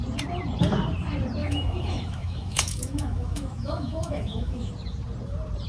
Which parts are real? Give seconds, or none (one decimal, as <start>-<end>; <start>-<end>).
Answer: 0.0-1.4; 4.7-5.7